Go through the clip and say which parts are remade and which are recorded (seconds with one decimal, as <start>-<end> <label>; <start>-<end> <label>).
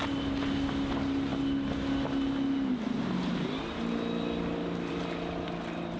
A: 0.0-6.0 recorded